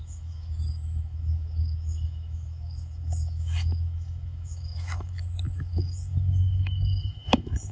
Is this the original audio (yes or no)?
no